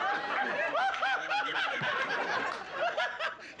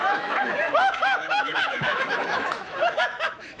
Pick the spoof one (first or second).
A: second